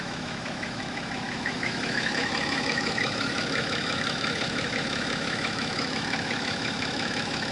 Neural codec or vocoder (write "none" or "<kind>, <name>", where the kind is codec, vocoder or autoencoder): autoencoder, DAC-VAE